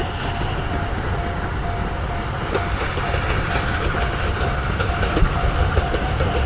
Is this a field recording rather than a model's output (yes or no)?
yes